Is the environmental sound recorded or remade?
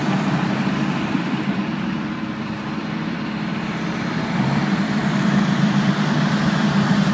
remade